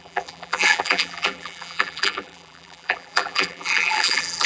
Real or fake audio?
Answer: fake